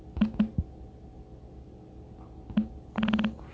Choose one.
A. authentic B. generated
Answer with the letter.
A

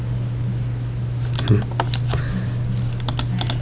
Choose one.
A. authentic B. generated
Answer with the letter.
A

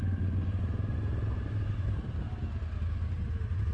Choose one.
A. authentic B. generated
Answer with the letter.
A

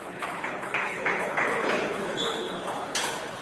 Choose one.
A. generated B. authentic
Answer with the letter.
A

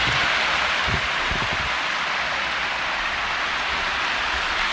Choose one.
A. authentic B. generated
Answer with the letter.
A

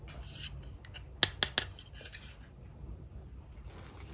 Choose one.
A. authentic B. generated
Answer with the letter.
A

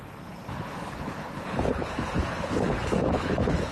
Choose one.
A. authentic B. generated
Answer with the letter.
B